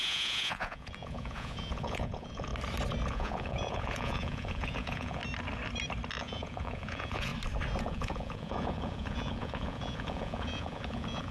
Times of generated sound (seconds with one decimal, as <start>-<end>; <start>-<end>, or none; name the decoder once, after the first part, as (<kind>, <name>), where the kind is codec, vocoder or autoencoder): 0.0-2.5 (vocoder, Vocos); 3.1-5.2; 6.2-7.3; 7.8-11.3